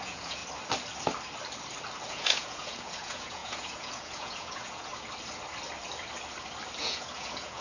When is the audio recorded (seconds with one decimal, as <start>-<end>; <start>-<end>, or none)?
0.4-2.1; 4.9-6.8